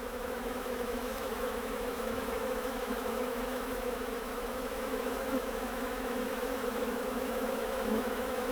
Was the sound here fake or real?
fake